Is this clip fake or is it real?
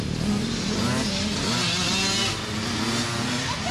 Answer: real